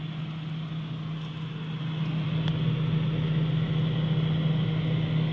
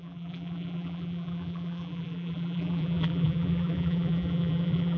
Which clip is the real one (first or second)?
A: first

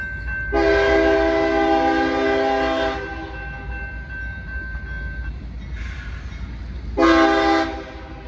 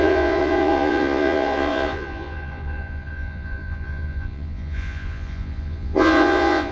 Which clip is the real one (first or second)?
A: first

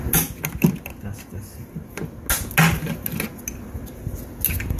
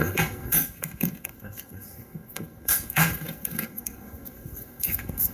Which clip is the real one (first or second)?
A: first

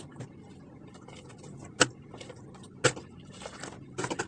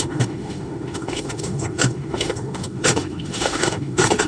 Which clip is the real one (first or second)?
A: first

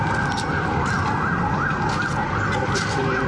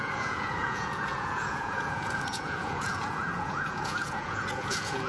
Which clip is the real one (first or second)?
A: first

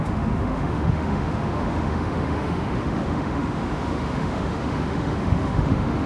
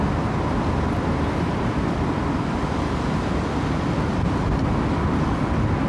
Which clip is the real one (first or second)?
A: second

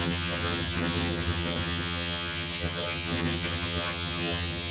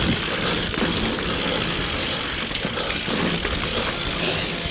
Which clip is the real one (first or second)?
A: second